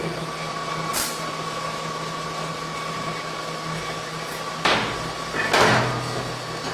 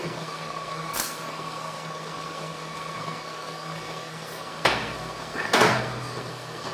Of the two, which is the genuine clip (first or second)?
first